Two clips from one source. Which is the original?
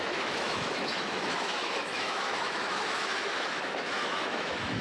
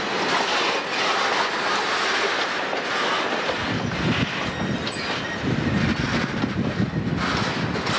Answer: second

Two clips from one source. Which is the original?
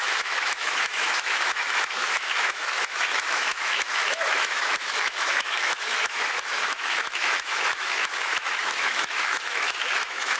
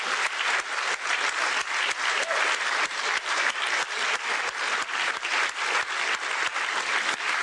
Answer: second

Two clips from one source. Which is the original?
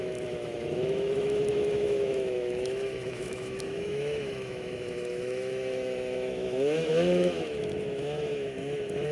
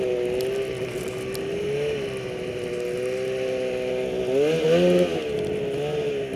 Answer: second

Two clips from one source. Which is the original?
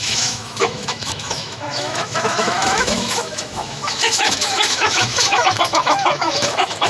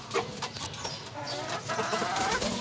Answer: second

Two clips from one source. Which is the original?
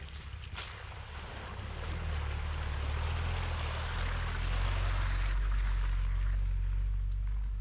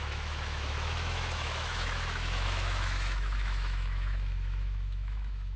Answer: first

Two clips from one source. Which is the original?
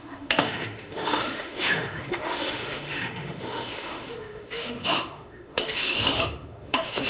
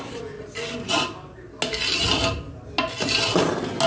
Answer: second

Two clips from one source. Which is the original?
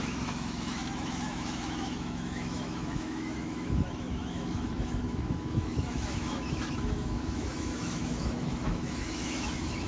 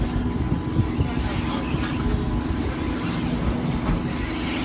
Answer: second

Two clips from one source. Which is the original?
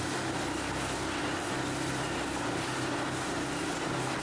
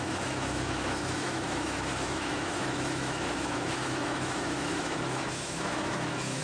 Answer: first